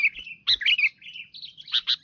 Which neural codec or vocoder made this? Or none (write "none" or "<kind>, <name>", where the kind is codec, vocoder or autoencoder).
none